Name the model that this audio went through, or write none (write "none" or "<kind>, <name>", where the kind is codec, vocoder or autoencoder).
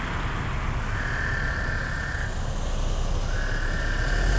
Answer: none